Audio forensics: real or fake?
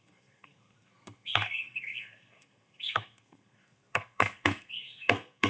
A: fake